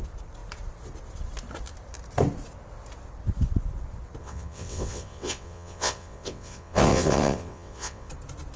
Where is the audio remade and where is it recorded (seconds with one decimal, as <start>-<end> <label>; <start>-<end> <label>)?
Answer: 0.0-4.2 recorded; 4.2-8.1 remade; 8.1-8.6 recorded